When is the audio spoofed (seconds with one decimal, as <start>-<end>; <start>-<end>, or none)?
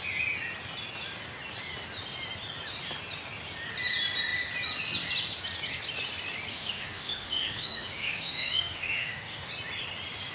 6.5-9.5